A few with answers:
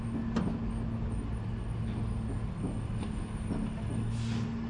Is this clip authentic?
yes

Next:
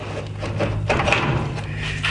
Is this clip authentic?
yes